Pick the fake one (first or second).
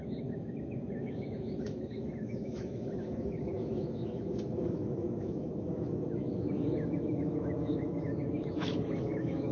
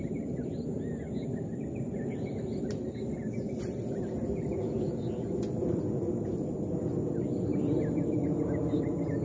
first